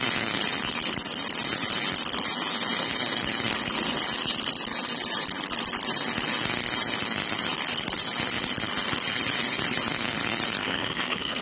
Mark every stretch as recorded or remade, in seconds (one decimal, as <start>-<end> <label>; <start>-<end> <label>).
0.0-10.6 recorded; 10.6-11.4 remade